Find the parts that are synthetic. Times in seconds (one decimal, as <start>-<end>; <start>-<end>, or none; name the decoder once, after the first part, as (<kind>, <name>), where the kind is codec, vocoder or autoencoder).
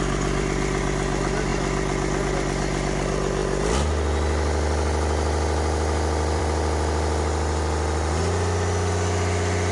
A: none